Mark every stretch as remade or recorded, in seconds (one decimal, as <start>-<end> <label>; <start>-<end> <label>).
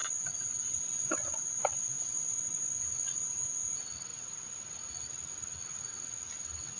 0.0-4.1 recorded; 4.1-4.9 remade; 4.9-6.8 recorded